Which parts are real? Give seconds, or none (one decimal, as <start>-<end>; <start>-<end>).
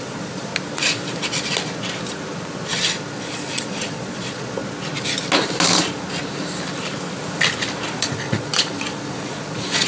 0.5-3.2; 4.6-7.9